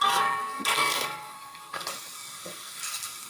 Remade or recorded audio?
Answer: remade